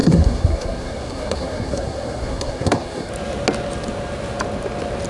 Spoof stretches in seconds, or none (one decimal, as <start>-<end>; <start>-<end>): 0.0-3.1